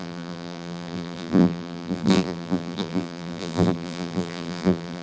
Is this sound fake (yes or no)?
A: yes